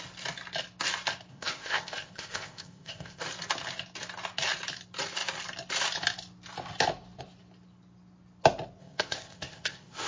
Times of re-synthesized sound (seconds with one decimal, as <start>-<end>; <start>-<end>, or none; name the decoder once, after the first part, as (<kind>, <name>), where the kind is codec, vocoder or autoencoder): 1.3-3.2 (codec, ZipCodec); 8.8-10.1